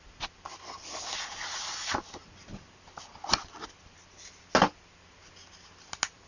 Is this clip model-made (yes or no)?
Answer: no